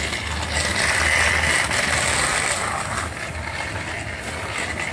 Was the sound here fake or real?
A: real